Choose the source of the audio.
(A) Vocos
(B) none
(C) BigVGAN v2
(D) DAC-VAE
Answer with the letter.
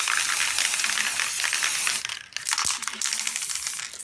B